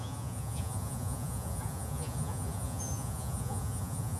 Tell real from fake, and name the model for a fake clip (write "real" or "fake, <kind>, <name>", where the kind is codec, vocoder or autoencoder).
fake, vocoder, Vocos